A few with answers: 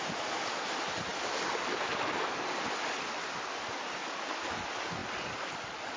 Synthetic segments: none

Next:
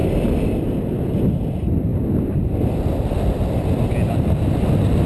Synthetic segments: none

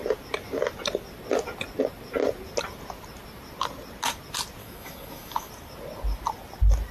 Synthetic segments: 4.6-5.5 (autoencoder, DAC-VAE)

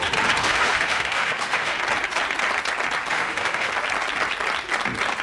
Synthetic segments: 0.4-1.8 (autoencoder, DAC-VAE); 3.1-3.7